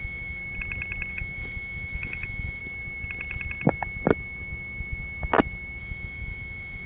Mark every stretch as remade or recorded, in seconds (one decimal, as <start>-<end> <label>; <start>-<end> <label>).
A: 0.0-0.4 remade; 0.4-1.1 recorded; 1.1-2.6 remade; 2.6-5.8 recorded; 5.8-6.9 remade